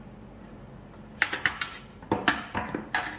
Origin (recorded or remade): recorded